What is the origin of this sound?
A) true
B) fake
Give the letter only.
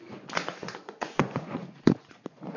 B